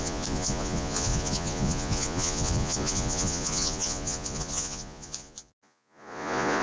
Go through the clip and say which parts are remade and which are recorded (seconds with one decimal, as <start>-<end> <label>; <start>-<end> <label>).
0.0-6.6 remade

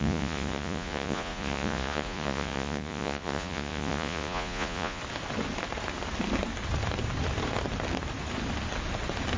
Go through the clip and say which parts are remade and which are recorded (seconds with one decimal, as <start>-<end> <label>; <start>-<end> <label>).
0.0-5.0 remade; 5.0-9.4 recorded

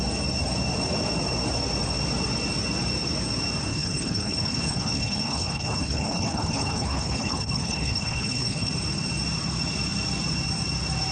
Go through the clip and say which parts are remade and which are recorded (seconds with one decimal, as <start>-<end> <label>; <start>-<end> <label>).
0.0-3.7 recorded; 3.7-8.7 remade; 8.7-11.1 recorded

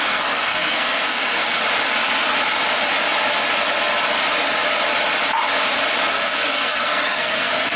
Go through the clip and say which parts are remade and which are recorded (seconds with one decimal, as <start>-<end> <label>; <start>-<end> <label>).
0.0-1.6 remade; 1.6-6.1 recorded; 6.1-7.8 remade

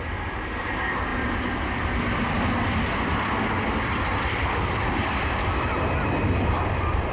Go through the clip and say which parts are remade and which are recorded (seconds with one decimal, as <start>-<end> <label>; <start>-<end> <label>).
0.0-7.1 recorded

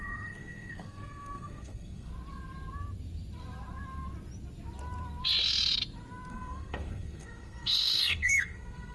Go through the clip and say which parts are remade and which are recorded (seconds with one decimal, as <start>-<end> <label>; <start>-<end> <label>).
0.0-2.1 remade; 2.1-6.3 recorded; 6.3-8.9 remade

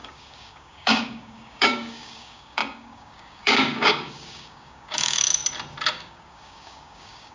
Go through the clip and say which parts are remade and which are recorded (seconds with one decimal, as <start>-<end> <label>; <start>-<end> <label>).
0.0-5.4 remade; 5.4-5.9 recorded; 5.9-7.3 remade